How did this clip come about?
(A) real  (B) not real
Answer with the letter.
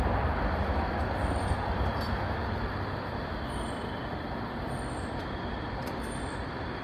A